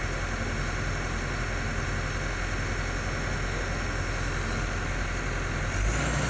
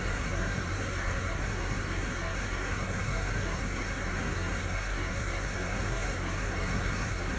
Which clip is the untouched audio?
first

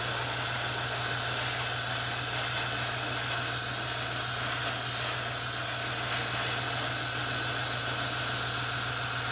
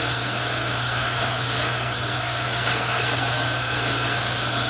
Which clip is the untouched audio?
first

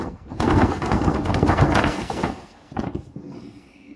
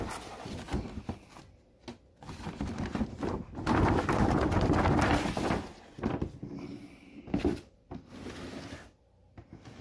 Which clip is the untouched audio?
second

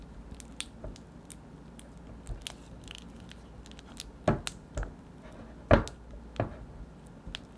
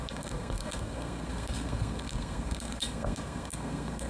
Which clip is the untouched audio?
first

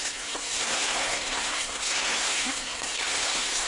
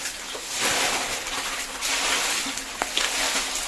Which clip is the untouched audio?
second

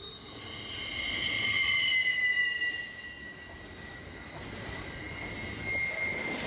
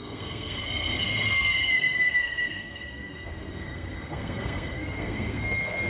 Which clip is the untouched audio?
first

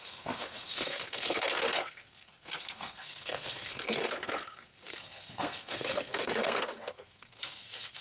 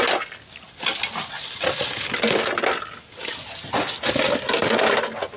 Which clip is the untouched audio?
second